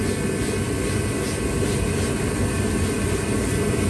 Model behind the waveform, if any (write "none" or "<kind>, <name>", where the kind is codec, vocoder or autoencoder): none